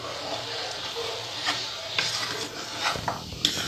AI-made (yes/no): no